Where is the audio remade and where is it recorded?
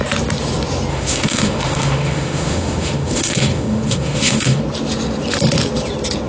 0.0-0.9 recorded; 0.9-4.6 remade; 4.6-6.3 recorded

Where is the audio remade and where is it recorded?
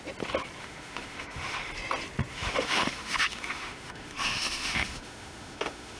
0.0-0.6 recorded; 0.6-1.7 remade; 1.7-2.3 recorded; 2.3-6.0 remade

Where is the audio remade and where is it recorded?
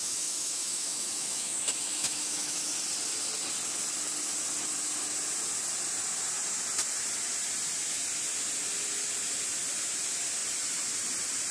0.0-2.7 remade; 2.7-11.5 recorded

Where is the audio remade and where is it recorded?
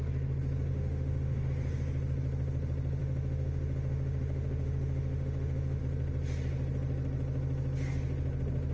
0.0-0.7 recorded; 0.7-1.5 remade; 1.5-3.0 recorded; 3.0-5.8 remade; 5.8-8.7 recorded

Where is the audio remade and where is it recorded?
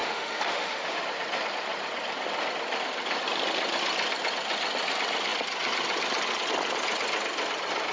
0.0-1.0 remade; 1.0-7.9 recorded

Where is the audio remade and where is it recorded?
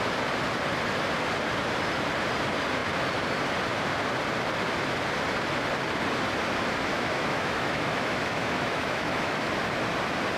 0.0-6.9 recorded; 6.9-9.5 remade; 9.5-10.4 recorded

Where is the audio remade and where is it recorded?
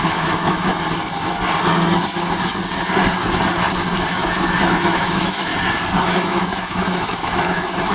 0.0-0.7 remade; 0.7-4.1 recorded; 4.1-5.5 remade; 5.5-6.0 recorded; 6.0-7.9 remade